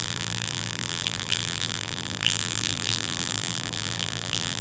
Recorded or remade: remade